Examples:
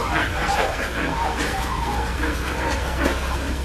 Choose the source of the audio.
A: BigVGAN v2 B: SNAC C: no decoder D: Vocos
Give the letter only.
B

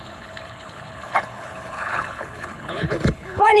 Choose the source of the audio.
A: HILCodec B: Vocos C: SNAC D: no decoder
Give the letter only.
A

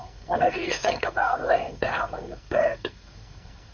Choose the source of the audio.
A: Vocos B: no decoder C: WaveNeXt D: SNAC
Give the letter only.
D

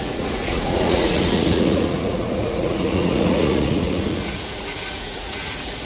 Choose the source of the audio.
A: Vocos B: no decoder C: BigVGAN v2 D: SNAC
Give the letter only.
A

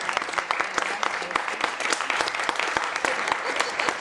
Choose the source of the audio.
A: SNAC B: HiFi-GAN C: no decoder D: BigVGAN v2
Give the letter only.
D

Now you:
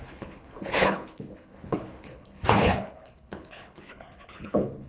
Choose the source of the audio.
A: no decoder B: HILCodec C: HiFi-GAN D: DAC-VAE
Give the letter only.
B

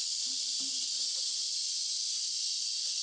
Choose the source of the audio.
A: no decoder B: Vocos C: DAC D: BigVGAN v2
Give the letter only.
D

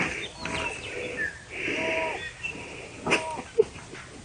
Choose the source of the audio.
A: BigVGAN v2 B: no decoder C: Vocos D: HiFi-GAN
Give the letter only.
B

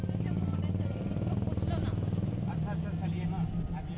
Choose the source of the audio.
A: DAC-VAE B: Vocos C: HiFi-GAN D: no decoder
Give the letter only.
D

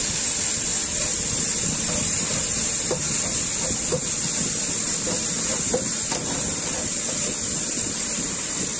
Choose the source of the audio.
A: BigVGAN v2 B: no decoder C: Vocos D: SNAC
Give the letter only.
A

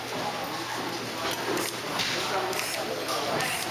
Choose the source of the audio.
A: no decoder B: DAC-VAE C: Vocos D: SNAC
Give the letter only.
A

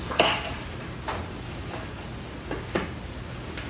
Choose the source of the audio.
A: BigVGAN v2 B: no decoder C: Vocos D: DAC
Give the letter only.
B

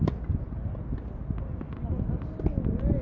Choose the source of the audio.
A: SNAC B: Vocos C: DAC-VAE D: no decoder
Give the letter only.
D